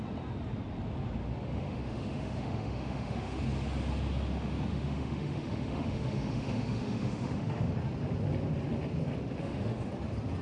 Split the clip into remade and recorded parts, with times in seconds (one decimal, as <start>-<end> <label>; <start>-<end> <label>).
0.0-1.5 recorded; 1.5-3.4 remade; 3.4-4.7 recorded; 4.7-7.7 remade; 7.7-9.4 recorded; 9.4-9.9 remade; 9.9-10.4 recorded